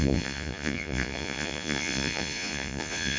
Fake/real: fake